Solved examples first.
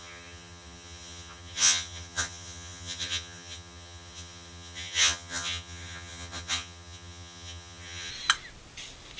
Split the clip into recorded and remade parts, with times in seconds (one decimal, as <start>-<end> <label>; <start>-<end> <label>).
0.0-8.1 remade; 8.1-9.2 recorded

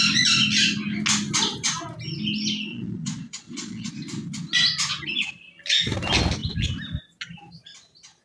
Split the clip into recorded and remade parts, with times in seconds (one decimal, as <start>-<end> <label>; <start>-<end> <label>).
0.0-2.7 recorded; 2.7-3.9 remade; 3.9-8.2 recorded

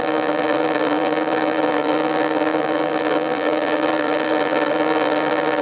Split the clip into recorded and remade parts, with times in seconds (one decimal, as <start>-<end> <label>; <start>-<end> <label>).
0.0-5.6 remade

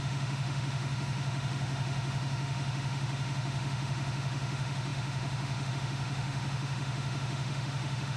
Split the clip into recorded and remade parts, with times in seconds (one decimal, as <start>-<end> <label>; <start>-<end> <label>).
0.0-8.2 remade

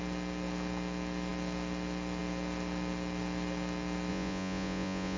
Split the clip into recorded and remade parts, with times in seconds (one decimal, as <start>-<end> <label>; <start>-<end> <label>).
0.0-4.1 recorded; 4.1-5.2 remade

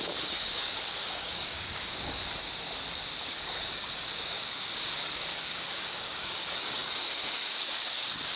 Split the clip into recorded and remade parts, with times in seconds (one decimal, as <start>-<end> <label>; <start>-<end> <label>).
0.0-2.2 remade; 2.2-3.2 recorded; 3.2-8.4 remade